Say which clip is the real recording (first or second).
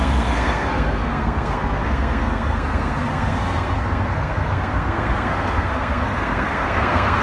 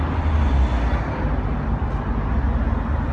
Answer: second